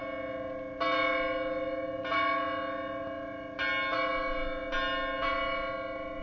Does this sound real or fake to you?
real